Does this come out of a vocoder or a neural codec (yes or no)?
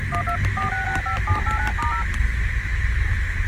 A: no